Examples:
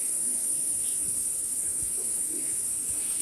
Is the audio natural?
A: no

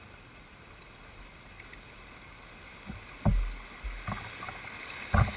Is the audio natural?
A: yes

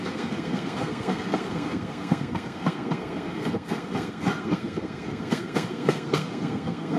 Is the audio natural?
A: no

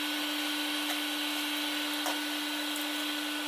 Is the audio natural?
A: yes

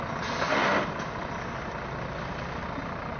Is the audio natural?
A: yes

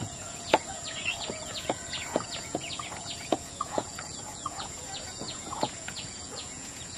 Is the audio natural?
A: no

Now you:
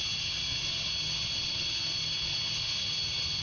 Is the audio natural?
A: no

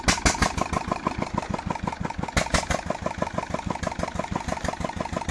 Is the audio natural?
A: yes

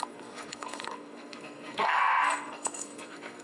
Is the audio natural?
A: no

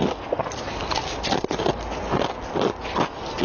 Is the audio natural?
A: no